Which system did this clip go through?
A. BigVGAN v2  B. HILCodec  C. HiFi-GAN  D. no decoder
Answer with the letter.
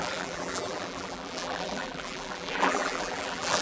A